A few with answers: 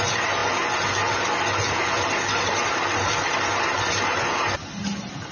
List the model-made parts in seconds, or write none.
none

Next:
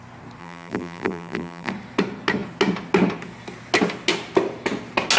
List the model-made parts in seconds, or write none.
0.4-1.7